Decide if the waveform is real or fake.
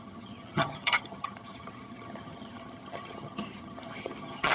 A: fake